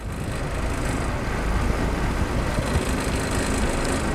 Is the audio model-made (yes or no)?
no